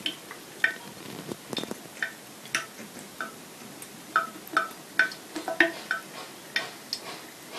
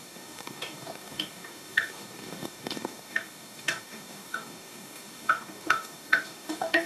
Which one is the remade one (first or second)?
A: second